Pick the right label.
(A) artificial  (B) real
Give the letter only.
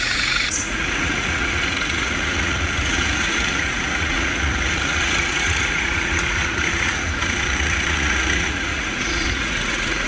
A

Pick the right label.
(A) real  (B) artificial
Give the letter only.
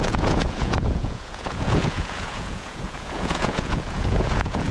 B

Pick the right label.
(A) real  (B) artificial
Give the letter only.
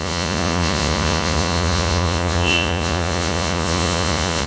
B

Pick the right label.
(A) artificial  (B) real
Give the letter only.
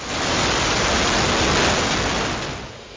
B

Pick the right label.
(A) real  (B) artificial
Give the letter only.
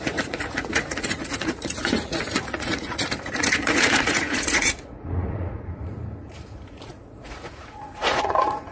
B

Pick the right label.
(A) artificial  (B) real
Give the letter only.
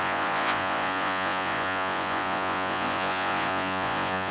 A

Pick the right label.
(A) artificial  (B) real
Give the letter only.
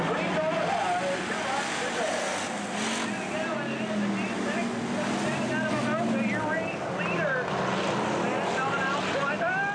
B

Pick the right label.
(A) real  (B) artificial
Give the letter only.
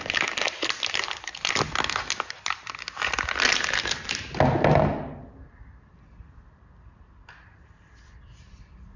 A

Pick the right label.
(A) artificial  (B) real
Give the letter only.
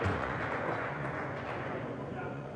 A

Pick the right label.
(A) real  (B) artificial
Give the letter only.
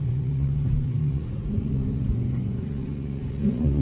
B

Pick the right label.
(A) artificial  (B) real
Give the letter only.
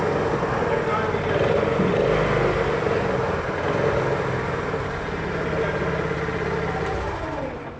B